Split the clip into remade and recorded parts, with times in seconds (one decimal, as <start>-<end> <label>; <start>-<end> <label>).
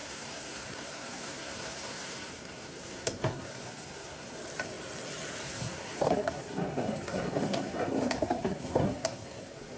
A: 0.0-4.4 remade; 4.4-5.4 recorded; 5.4-9.8 remade